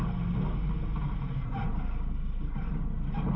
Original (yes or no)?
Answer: yes